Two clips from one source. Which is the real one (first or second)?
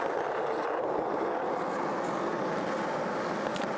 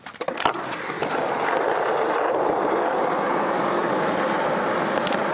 first